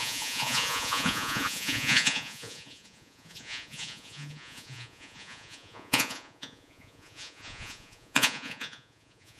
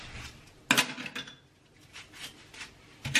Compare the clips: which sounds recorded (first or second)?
second